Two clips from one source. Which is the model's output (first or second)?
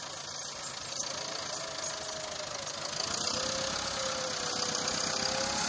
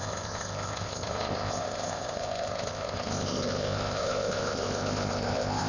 second